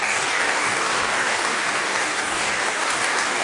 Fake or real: fake